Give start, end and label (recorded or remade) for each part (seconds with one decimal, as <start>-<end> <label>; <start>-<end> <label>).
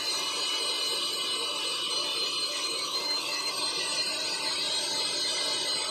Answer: 0.0-2.5 recorded; 2.5-3.5 remade; 3.5-5.9 recorded